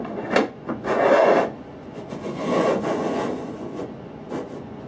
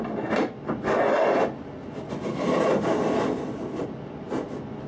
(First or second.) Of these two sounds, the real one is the second